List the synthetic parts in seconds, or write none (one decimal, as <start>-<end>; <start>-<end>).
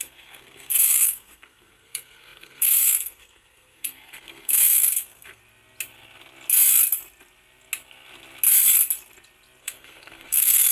0.0-5.4; 9.6-10.7